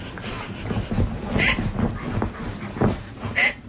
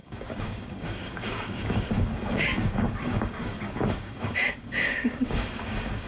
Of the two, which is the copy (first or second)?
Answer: second